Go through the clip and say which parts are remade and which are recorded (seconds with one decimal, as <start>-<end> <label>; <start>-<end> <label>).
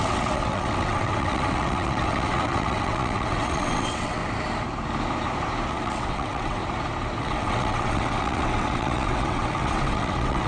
0.0-4.2 remade; 4.2-5.7 recorded; 5.7-6.6 remade; 6.6-7.2 recorded; 7.2-10.5 remade